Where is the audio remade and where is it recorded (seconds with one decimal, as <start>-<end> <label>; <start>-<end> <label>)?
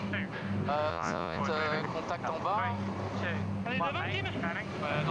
0.0-0.9 recorded; 0.9-1.4 remade; 1.4-5.1 recorded